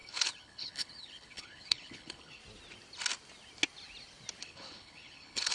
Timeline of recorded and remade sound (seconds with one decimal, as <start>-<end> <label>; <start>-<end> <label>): 0.0-2.4 remade; 2.4-4.4 recorded; 4.4-5.5 remade